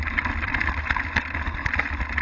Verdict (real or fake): real